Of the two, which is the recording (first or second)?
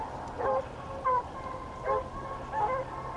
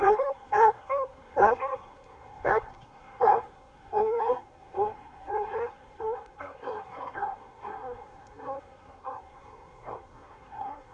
first